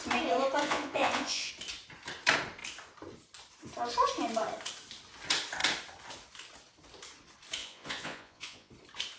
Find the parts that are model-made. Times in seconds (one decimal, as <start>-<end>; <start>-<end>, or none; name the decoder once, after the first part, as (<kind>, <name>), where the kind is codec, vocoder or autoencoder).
0.6-1.5 (vocoder, Vocos); 7.6-8.7

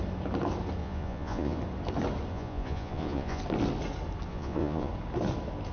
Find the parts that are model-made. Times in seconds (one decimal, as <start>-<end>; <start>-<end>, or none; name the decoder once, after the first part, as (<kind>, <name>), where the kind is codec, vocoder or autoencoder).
0.8-1.6 (vocoder, Vocos); 2.3-3.4; 4.3-4.9